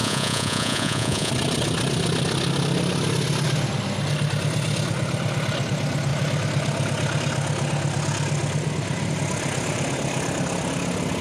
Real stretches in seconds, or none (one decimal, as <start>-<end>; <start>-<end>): 1.3-11.2